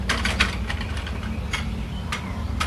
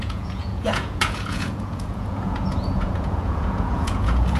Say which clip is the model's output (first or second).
second